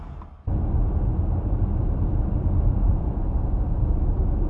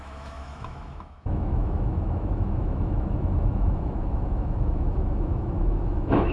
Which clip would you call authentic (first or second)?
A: first